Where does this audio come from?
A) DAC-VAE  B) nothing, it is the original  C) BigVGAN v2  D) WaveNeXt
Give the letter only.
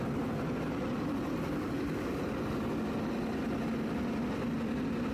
B